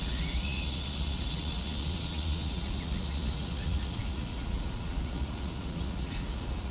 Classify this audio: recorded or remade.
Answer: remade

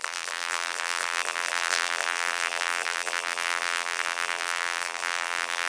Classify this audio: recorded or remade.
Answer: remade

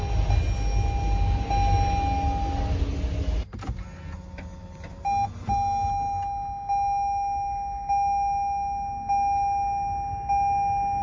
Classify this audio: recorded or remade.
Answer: recorded